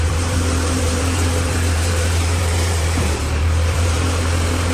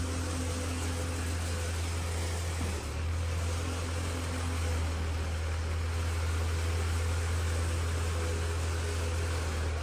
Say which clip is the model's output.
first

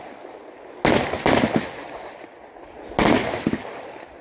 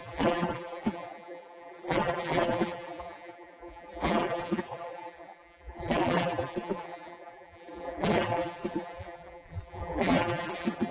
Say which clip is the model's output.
second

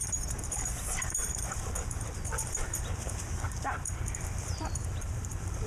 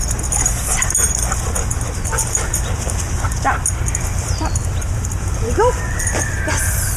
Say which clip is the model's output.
first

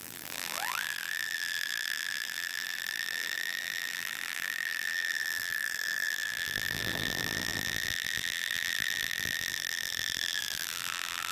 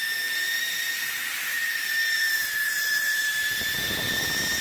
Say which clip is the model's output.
first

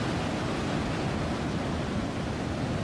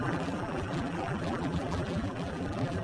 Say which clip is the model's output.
second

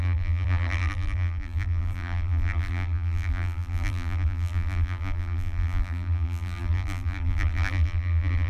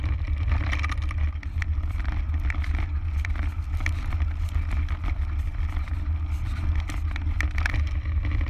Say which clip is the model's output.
first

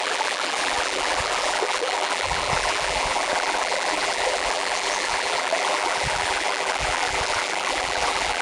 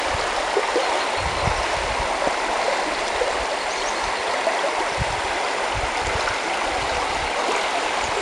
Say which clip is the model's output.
first